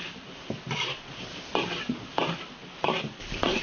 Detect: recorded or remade recorded